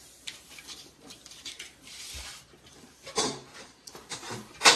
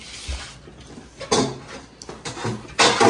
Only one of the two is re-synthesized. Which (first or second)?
first